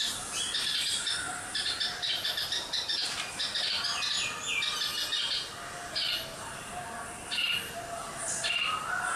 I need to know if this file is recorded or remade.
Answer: recorded